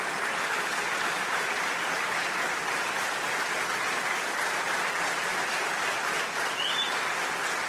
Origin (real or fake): real